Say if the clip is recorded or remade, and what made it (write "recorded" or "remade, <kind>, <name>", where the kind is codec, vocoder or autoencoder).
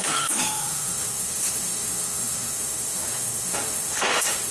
remade, autoencoder, DAC-VAE